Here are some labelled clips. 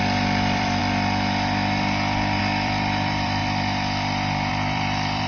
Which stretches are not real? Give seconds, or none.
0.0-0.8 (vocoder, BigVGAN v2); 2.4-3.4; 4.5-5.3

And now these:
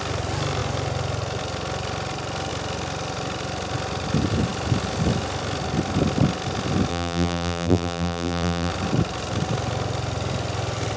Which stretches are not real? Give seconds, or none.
6.9-8.7 (vocoder, BigVGAN v2)

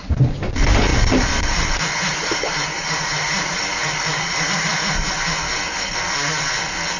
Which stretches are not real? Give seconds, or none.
0.9-5.1 (vocoder, BigVGAN v2)

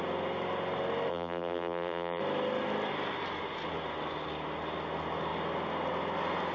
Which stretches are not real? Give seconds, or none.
1.1-2.2 (vocoder, BigVGAN v2)

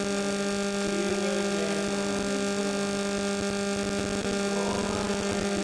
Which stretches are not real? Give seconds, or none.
none